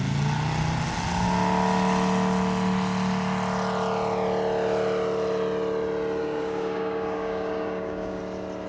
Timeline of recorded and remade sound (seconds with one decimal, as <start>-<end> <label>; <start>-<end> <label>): 0.0-6.2 recorded; 6.2-8.2 remade; 8.2-8.7 recorded